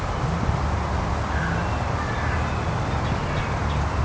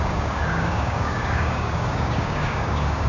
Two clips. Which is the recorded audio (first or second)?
first